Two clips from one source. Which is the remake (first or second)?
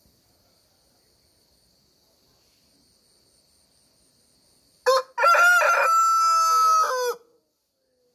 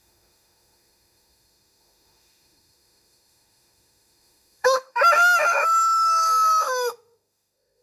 second